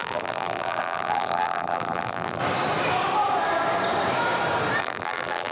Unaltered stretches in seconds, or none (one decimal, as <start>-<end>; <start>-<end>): 2.4-4.8